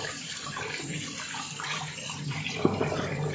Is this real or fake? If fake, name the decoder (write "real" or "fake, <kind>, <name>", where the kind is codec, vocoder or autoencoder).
fake, vocoder, BigVGAN v2